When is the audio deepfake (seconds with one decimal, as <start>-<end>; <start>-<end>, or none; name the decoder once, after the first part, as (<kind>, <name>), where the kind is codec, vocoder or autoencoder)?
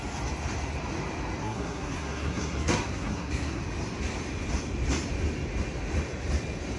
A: 1.4-3.6 (codec, SNAC)